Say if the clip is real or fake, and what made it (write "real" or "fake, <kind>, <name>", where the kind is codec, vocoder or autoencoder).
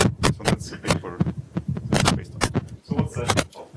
real